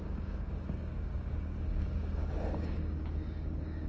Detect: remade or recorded remade